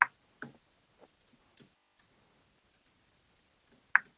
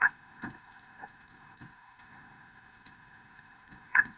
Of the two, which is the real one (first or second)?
first